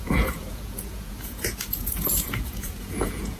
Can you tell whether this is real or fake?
fake